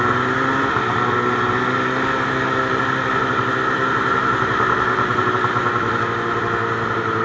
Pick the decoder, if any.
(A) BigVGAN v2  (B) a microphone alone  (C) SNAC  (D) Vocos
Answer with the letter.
B